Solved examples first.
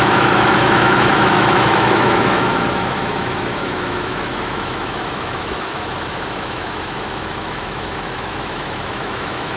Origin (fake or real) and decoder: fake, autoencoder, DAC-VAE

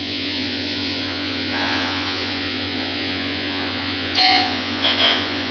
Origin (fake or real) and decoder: fake, vocoder, Vocos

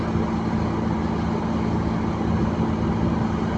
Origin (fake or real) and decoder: real